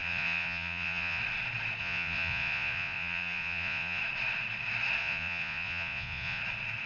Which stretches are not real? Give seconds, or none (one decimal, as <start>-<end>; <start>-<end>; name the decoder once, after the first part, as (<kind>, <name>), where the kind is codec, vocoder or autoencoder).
0.0-1.2 (vocoder, Vocos); 1.8-4.0; 5.0-6.4